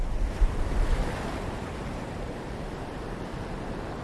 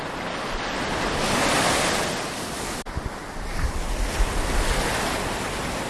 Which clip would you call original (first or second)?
second